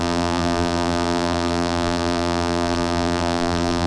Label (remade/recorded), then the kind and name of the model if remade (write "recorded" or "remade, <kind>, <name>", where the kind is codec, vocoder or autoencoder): remade, vocoder, BigVGAN v2